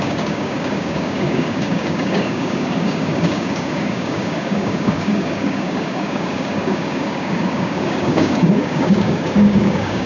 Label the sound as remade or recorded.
remade